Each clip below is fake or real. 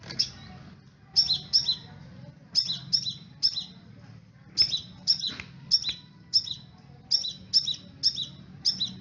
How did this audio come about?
real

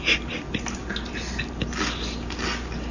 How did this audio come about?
real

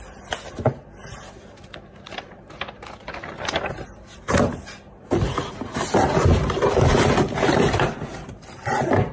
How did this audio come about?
real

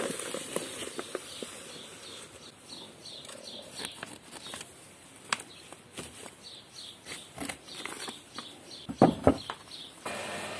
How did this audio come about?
real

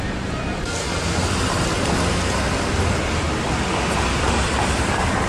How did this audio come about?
real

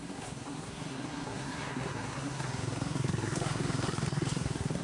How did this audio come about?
fake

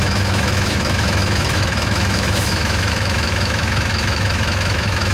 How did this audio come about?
fake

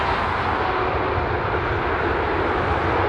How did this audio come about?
real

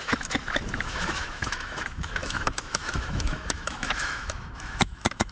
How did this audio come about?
fake